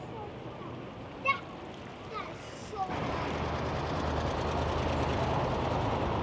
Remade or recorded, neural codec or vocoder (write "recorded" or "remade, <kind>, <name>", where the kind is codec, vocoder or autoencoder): recorded